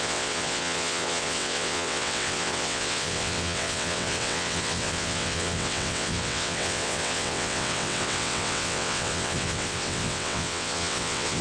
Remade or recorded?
remade